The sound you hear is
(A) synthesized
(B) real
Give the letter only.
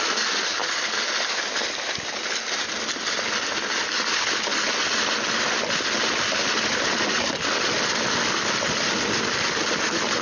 B